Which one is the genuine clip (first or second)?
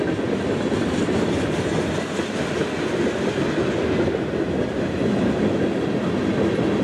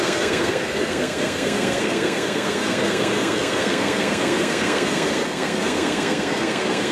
first